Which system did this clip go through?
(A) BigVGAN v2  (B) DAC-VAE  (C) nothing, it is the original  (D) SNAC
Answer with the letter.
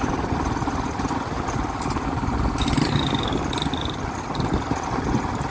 C